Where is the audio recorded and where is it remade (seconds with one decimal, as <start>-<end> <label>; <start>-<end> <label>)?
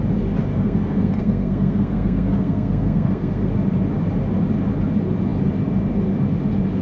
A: 0.0-0.5 recorded; 0.5-3.5 remade; 3.5-6.8 recorded